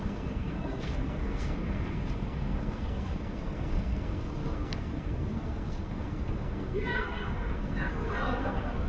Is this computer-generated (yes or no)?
yes